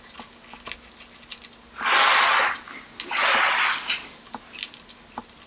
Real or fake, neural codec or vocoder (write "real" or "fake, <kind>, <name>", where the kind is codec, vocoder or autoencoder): real